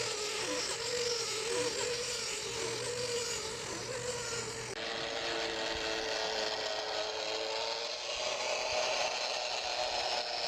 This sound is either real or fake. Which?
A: real